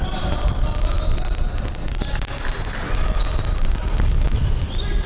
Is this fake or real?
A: real